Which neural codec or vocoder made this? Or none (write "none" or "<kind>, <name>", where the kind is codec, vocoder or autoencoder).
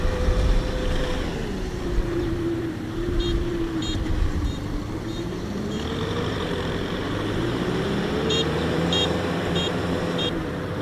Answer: vocoder, BigVGAN v2